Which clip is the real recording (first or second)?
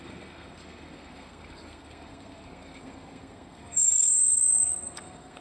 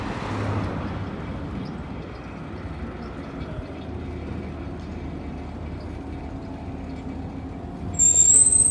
second